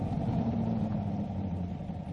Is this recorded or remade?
remade